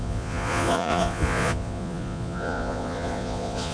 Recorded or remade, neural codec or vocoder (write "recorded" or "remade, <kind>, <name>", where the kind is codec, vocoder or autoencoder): remade, vocoder, Vocos